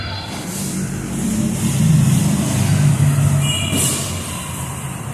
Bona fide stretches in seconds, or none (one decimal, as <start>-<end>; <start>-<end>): 1.3-4.4

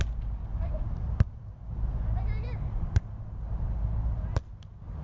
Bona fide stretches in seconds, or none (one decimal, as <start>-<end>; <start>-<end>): 0.0-0.5; 1.9-3.5; 4.4-5.0

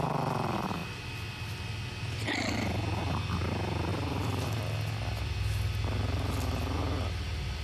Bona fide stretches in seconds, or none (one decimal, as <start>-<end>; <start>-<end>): 0.0-3.9; 4.6-7.6

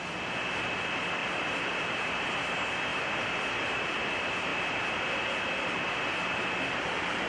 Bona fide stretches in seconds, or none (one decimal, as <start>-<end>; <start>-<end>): 0.0-1.2; 2.4-2.9; 4.0-4.5